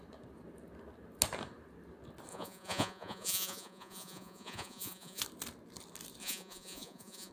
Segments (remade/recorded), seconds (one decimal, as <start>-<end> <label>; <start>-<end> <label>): 0.0-2.3 recorded; 2.3-5.2 remade; 5.2-6.2 recorded; 6.2-7.3 remade